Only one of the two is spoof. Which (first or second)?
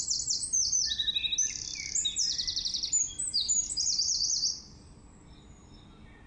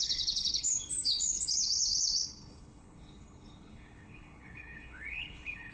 second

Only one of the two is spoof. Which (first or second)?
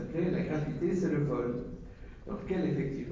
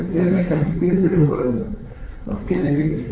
second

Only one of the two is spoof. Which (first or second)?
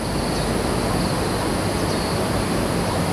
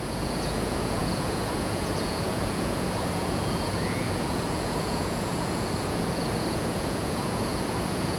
second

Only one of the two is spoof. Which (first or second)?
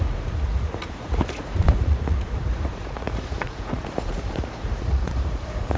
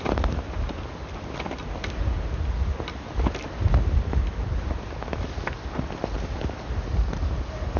first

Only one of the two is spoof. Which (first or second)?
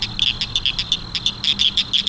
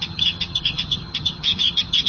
second